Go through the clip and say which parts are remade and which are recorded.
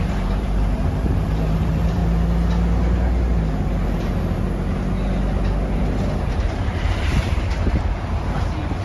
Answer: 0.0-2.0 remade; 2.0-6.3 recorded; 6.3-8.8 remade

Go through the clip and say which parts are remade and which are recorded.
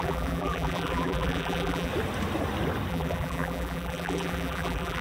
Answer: 0.0-1.9 remade; 1.9-2.9 recorded; 2.9-5.0 remade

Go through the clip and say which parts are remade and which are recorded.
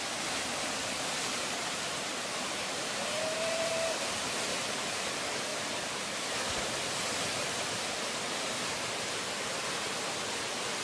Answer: 0.0-1.3 recorded; 1.3-3.7 remade; 3.7-4.5 recorded; 4.5-5.1 remade; 5.1-5.5 recorded; 5.5-6.2 remade; 6.2-10.8 recorded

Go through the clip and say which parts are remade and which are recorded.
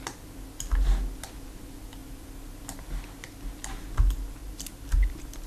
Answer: 0.0-2.0 recorded; 2.0-3.0 remade; 3.0-4.4 recorded; 4.4-5.1 remade; 5.1-5.5 recorded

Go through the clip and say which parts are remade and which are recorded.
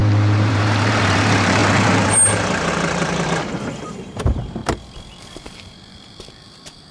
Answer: 0.0-4.6 remade; 4.6-5.3 recorded; 5.3-6.9 remade